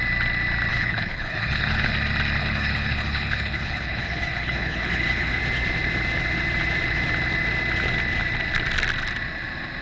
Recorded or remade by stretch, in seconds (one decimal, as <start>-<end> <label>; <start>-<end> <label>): 0.0-0.7 recorded; 0.7-1.9 remade; 1.9-2.4 recorded; 2.4-5.4 remade; 5.4-9.8 recorded